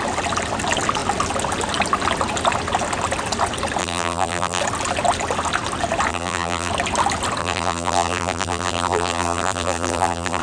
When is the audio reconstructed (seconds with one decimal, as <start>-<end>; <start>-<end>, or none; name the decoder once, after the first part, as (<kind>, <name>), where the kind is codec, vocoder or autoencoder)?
3.8-4.6 (vocoder, BigVGAN v2); 6.1-6.7; 7.4-10.4